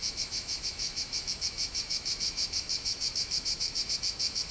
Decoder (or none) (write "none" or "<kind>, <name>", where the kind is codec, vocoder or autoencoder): autoencoder, DAC-VAE